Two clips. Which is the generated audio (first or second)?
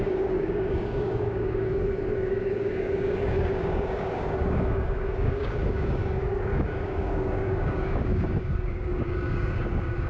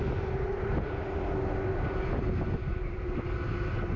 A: first